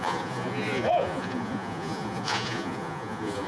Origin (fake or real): fake